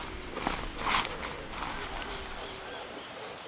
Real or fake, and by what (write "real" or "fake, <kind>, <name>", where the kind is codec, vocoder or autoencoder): real